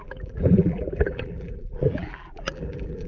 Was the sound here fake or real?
fake